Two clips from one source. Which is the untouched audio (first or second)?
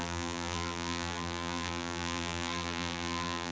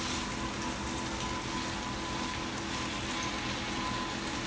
second